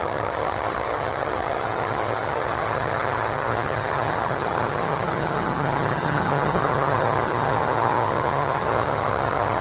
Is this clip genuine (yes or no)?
no